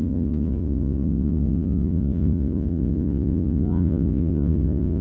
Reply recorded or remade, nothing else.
remade